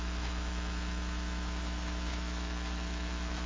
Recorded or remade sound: remade